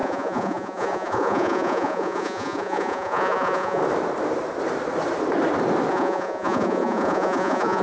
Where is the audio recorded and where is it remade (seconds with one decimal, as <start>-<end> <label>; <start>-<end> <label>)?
0.0-3.8 remade; 3.8-5.9 recorded; 5.9-7.8 remade